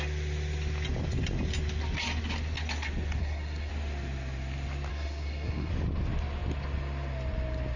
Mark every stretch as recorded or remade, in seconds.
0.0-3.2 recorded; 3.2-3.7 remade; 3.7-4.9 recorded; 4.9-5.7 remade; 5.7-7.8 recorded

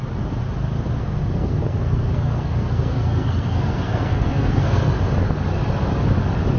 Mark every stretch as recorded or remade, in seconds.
0.0-1.0 recorded; 1.0-5.0 remade; 5.0-6.6 recorded

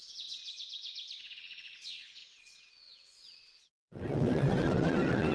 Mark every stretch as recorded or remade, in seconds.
0.0-0.4 remade; 0.4-1.2 recorded; 1.2-5.3 remade

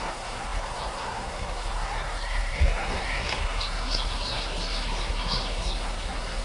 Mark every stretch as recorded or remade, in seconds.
0.0-6.4 remade